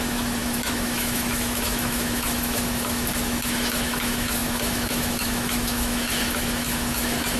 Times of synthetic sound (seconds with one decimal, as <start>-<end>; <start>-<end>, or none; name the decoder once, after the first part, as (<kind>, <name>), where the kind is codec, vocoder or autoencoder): 0.0-7.4 (autoencoder, DAC-VAE)